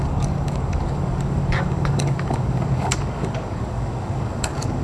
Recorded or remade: remade